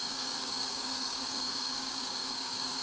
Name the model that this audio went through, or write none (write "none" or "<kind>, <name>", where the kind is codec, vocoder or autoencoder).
codec, DAC